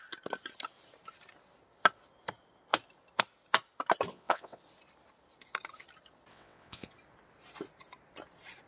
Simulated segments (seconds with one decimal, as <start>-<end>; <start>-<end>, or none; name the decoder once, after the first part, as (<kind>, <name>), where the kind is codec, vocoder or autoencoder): 4.1-4.6 (vocoder, WaveNeXt); 6.3-6.9